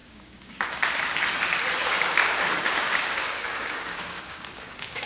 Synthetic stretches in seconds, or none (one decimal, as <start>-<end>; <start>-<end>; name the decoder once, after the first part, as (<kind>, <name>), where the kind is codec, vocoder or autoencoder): 0.0-0.8 (codec, DAC); 1.8-5.1